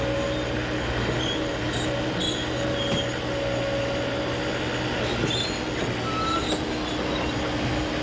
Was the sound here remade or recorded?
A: recorded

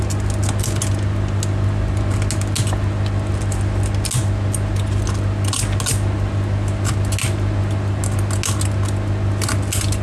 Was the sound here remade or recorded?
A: recorded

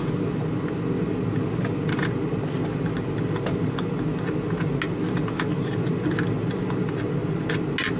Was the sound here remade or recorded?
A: recorded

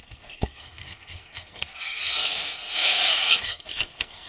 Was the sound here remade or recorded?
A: remade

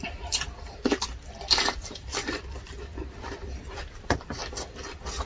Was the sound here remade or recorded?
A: remade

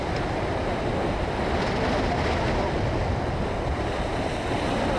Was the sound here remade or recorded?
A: recorded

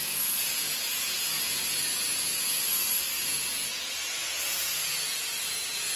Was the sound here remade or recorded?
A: remade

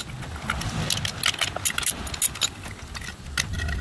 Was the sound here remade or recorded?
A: recorded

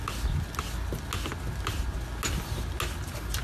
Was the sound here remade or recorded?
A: recorded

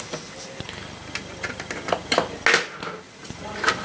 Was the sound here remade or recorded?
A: recorded